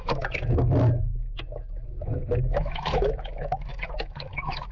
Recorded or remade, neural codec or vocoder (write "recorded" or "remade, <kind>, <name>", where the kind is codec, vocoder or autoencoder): remade, autoencoder, DAC-VAE